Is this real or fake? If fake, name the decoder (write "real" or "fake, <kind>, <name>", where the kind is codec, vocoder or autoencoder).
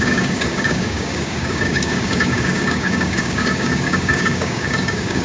fake, codec, DAC